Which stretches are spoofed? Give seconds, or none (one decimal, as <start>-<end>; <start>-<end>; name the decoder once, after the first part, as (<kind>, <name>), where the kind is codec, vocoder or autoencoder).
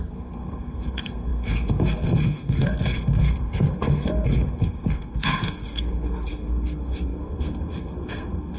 0.0-8.6 (codec, SNAC)